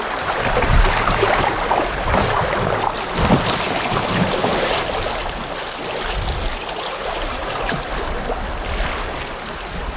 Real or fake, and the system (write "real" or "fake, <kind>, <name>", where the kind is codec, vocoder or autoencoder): real